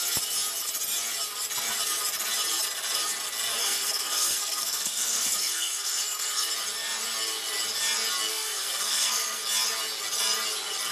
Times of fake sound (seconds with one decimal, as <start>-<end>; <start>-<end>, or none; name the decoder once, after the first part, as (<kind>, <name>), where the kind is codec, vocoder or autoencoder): 3.6-6.5 (codec, SNAC); 8.3-9.4